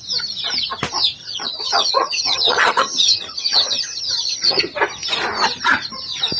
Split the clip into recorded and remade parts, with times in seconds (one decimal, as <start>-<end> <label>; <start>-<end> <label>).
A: 0.0-1.2 recorded; 1.2-4.6 remade; 4.6-6.4 recorded

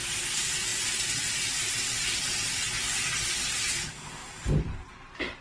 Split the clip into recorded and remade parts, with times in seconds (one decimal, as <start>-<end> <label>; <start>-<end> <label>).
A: 0.0-5.4 recorded

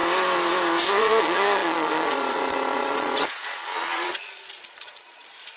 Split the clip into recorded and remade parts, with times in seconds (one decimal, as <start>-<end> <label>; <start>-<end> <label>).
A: 0.0-0.9 recorded; 0.9-5.6 remade

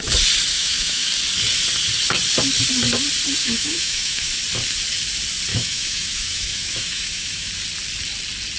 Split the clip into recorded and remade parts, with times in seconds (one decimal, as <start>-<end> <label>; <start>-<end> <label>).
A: 0.0-0.5 recorded; 0.5-1.1 remade; 1.1-3.4 recorded; 3.4-4.3 remade; 4.3-5.5 recorded; 5.5-7.5 remade; 7.5-8.6 recorded

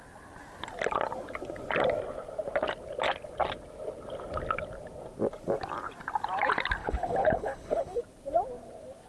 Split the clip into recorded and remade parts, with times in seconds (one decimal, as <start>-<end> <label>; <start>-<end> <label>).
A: 0.0-6.8 recorded; 6.8-8.0 remade; 8.0-9.1 recorded

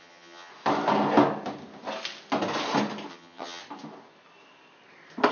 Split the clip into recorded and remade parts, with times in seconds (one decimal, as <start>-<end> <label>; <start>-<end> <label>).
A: 0.0-0.5 remade; 0.5-3.1 recorded; 3.1-3.6 remade; 3.6-5.3 recorded